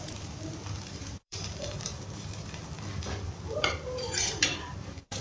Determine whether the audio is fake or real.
fake